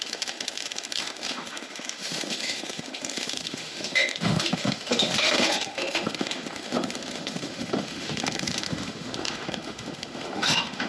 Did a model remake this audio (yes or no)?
yes